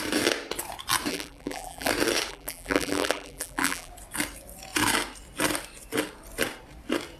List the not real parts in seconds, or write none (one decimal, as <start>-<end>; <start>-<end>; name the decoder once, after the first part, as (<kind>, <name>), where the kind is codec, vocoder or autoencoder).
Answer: 1.1-1.9 (vocoder, BigVGAN v2); 2.3-3.9